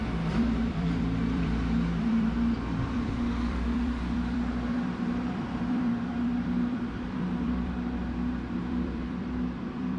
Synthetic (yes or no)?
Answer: yes